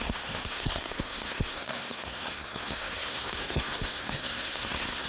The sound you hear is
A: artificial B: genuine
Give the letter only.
A